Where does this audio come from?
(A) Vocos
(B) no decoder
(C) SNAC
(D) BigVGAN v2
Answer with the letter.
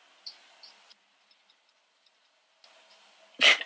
B